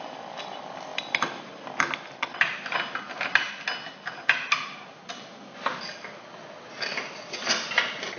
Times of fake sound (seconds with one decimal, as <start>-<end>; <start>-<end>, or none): none